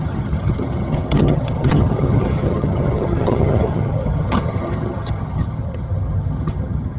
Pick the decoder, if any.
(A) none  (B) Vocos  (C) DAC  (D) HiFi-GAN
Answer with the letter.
D